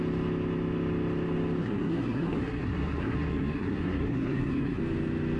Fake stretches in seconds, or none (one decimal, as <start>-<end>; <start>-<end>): 1.6-4.8